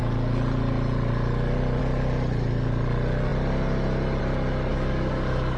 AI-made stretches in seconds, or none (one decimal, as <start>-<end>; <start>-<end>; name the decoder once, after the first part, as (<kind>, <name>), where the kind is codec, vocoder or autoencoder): 4.7-5.6 (codec, DAC)